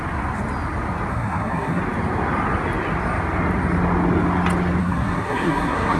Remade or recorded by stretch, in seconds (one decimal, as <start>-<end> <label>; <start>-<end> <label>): 0.0-1.1 recorded; 1.1-1.8 remade; 1.8-4.8 recorded; 4.8-6.0 remade